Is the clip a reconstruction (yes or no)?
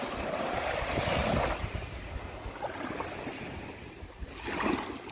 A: no